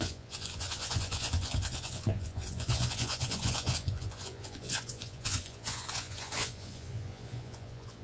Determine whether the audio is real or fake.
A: fake